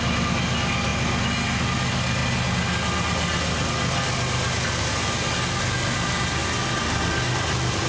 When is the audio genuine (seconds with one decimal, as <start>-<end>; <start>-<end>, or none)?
0.0-7.9